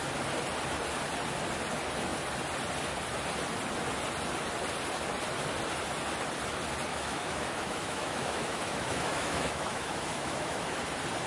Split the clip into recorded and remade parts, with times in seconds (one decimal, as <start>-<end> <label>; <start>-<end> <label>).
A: 0.0-6.9 recorded; 6.9-10.8 remade; 10.8-11.3 recorded